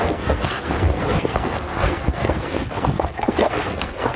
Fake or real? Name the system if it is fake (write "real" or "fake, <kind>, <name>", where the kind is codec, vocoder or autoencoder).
fake, codec, SNAC